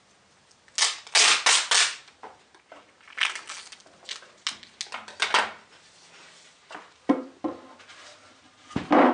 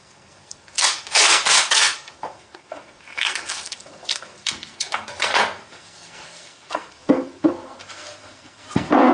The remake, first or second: second